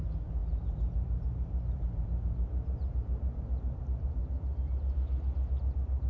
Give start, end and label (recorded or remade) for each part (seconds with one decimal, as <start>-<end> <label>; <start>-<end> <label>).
0.0-4.2 remade; 4.2-6.1 recorded